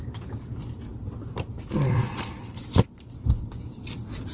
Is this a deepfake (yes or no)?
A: no